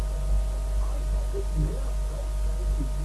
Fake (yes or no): no